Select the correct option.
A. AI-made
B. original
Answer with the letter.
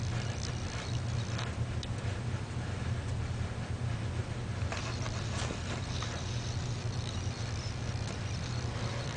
B